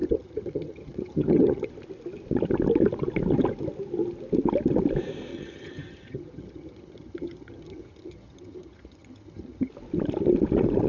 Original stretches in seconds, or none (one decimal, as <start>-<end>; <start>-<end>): 1.7-5.3; 9.7-10.9